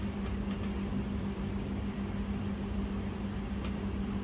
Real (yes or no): yes